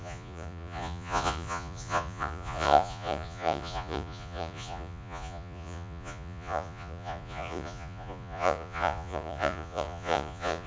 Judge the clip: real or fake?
fake